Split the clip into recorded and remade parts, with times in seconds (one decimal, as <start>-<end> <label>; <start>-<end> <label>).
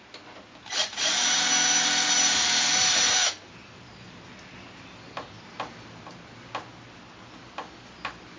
0.0-0.9 recorded; 0.9-3.3 remade; 3.3-8.4 recorded